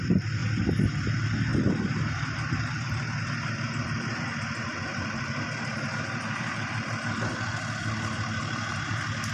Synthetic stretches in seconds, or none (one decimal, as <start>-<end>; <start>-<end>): 4.9-9.3